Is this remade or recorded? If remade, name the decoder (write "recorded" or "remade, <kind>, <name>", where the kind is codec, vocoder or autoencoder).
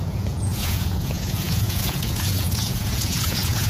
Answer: remade, vocoder, Vocos